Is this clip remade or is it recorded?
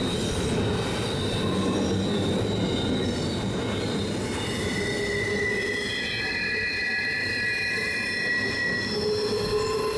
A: recorded